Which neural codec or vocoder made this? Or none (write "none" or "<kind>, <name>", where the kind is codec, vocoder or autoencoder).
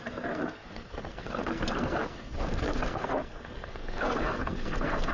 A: codec, SNAC